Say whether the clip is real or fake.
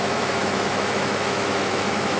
fake